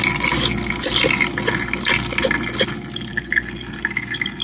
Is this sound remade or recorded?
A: recorded